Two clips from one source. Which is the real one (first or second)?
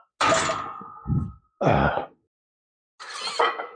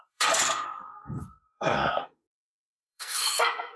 first